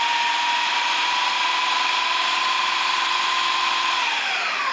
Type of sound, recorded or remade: remade